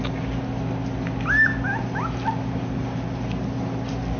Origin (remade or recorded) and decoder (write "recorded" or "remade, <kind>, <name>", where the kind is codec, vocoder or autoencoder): recorded